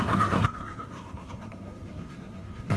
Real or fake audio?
fake